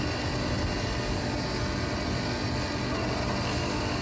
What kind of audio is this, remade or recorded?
recorded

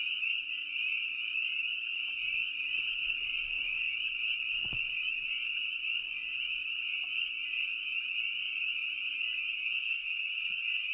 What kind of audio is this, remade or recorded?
remade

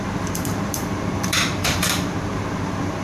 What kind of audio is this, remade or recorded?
remade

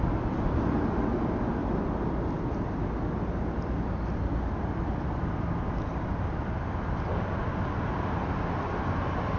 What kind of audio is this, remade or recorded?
recorded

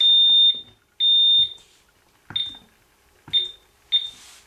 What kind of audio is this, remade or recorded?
recorded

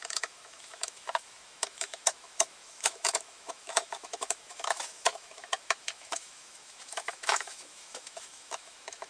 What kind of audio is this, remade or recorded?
remade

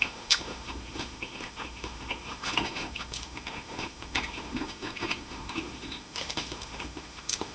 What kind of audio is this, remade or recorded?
remade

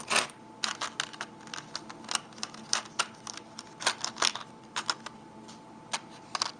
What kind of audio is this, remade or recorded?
recorded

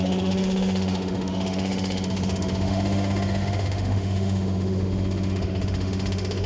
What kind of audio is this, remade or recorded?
remade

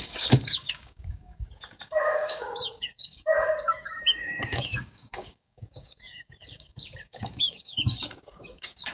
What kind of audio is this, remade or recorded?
remade